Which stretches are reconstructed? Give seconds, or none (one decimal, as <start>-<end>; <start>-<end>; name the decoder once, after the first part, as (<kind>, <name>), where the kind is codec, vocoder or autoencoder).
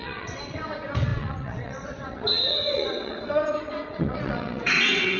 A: 0.0-5.2 (vocoder, WaveNeXt)